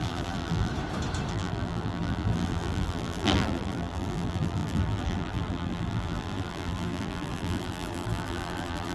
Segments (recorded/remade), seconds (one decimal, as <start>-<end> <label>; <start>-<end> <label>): 0.0-0.7 remade; 0.7-1.3 recorded; 1.3-8.9 remade